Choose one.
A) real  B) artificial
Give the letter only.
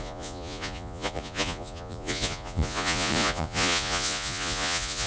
B